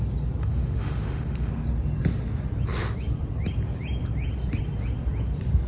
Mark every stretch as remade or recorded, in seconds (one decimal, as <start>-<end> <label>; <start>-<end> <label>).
0.0-0.4 recorded; 0.4-1.5 remade; 1.5-5.7 recorded